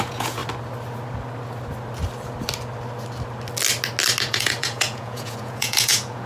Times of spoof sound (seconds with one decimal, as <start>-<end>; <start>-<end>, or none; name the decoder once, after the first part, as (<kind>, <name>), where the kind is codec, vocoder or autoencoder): 0.0-0.4 (vocoder, Vocos); 4.2-6.3